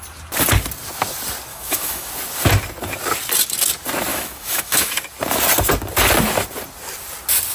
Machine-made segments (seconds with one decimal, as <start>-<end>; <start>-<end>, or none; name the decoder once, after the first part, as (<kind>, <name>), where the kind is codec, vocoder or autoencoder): 1.5-2.1 (autoencoder, DAC-VAE); 4.1-5.0